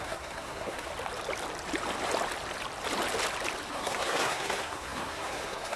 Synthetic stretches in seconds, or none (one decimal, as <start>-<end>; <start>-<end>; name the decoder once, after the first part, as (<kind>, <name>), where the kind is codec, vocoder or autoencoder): 0.0-0.9 (codec, SNAC); 3.7-5.8

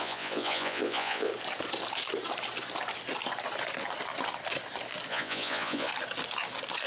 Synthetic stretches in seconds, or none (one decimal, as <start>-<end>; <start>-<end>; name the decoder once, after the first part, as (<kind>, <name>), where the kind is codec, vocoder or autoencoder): 0.0-1.3 (vocoder, Vocos); 5.1-5.9

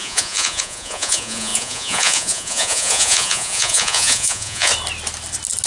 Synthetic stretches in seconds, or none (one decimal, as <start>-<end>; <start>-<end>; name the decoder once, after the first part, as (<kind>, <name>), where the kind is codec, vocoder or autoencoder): 0.0-4.7 (vocoder, Vocos)

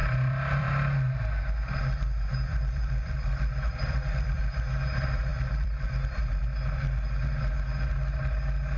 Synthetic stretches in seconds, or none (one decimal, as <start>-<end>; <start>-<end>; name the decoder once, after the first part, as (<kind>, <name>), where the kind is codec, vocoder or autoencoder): 0.0-0.7 (vocoder, BigVGAN v2); 2.5-4.4; 5.3-6.4

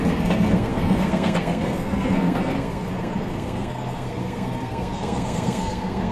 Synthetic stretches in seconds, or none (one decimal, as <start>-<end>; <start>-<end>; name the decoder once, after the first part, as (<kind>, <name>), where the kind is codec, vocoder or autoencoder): 0.0-6.1 (codec, SNAC)